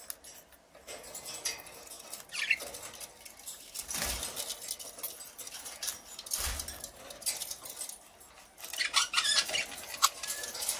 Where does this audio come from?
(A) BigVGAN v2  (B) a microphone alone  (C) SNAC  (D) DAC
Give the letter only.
B